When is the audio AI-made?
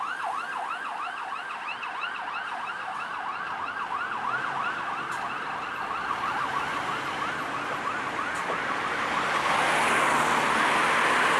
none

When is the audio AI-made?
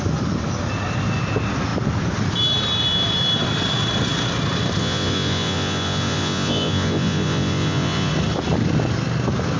4.8-8.1 (vocoder, Vocos)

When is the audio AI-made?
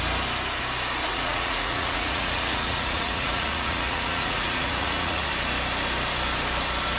1.1-5.3 (vocoder, Vocos)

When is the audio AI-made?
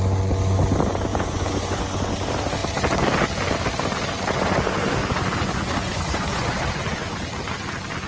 1.1-1.8 (vocoder, Vocos); 5.0-6.6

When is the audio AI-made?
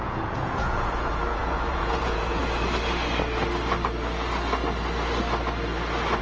0.0-2.4 (vocoder, Vocos)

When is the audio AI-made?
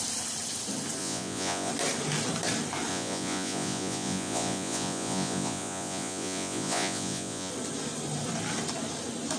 1.0-1.7 (vocoder, Vocos); 2.9-7.5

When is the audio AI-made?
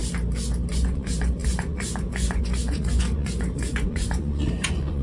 0.7-5.0 (vocoder, Vocos)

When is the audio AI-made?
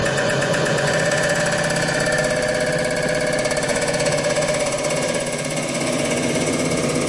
0.0-1.4 (vocoder, Vocos); 3.7-7.1